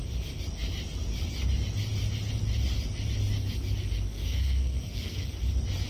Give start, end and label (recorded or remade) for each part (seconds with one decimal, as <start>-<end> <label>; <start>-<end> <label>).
0.0-4.1 recorded; 4.1-5.3 remade; 5.3-5.9 recorded